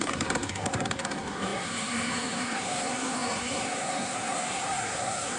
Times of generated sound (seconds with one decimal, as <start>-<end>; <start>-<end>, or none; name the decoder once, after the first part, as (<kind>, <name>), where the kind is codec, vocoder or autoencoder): 0.0-5.4 (codec, SNAC)